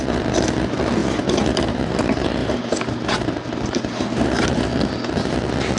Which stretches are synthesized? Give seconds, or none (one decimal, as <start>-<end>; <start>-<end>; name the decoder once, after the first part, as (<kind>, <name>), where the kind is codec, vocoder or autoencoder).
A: 1.0-2.0 (vocoder, BigVGAN v2); 2.4-4.9